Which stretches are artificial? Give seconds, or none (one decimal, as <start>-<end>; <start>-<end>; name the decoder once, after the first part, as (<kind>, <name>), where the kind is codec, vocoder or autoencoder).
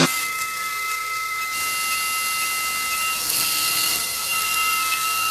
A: 0.0-1.4 (codec, SNAC); 3.2-5.3